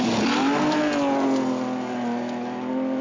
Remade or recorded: recorded